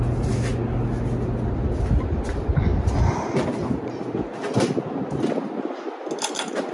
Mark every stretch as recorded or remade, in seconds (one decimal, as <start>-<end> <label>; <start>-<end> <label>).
0.0-6.7 recorded